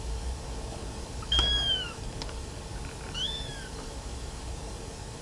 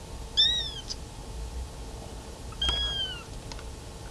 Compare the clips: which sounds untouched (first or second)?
second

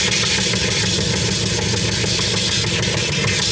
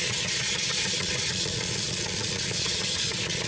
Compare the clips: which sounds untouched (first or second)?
first